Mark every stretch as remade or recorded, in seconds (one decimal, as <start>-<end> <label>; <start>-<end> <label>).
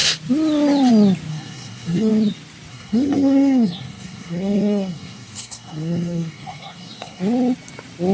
0.0-1.3 recorded; 1.3-2.1 remade; 2.1-2.7 recorded; 2.7-7.2 remade; 7.2-8.1 recorded